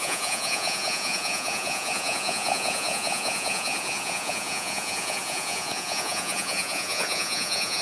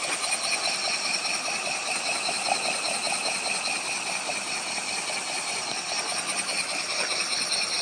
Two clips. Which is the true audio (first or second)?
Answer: second